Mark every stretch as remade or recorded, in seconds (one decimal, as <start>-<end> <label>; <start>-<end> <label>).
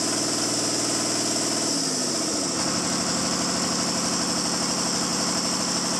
0.0-6.0 recorded